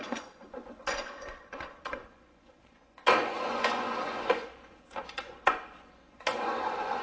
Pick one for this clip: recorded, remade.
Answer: remade